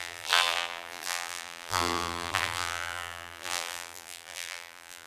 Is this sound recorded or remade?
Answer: remade